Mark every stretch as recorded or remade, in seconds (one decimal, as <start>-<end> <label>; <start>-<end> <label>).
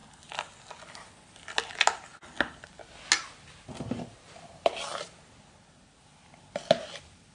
0.0-7.3 recorded